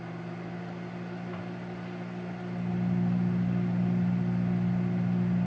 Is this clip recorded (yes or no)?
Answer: yes